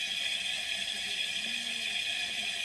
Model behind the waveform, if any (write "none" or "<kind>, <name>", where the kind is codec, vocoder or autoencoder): none